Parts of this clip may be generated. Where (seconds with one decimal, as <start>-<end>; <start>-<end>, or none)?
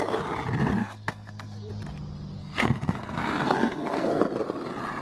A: 0.8-1.7; 2.4-4.3